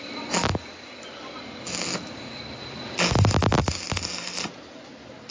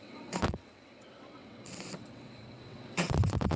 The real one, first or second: first